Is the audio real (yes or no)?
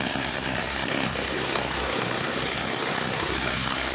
no